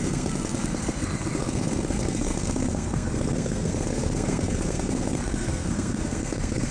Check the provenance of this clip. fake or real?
fake